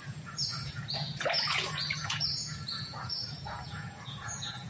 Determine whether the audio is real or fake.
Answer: fake